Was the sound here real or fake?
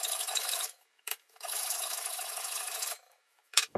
fake